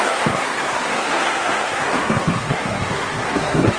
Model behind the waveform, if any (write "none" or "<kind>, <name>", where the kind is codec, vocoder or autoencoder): codec, SNAC